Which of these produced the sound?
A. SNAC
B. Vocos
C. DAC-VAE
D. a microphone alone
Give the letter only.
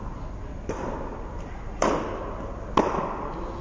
D